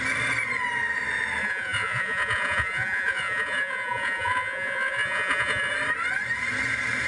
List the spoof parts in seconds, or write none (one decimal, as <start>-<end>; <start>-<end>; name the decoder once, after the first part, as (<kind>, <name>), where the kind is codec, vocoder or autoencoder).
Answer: 1.4-5.7 (vocoder, Vocos)